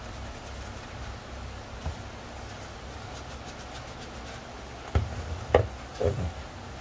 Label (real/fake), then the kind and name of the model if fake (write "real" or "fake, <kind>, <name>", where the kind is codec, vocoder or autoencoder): real